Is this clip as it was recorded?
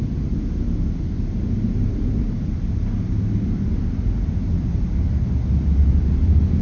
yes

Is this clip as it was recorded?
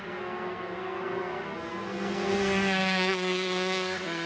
no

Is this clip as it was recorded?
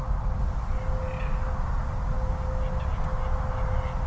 yes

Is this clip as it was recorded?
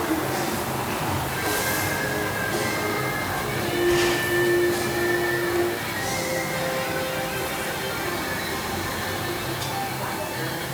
yes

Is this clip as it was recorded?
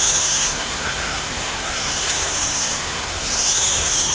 no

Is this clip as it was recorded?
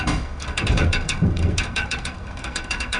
no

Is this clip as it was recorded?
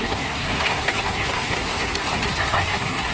no